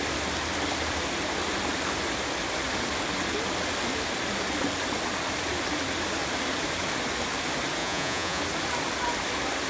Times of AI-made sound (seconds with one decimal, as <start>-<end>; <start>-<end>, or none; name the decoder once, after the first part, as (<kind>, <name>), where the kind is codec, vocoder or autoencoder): 7.8-8.4 (vocoder, Vocos)